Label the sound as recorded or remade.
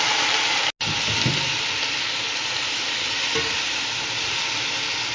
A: recorded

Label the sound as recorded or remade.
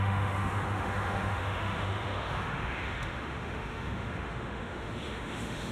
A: remade